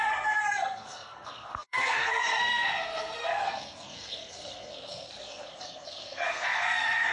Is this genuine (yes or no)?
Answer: no